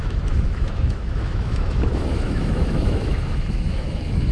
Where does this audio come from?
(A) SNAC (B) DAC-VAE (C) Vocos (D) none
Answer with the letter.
B